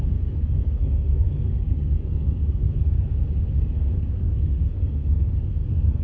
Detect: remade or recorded remade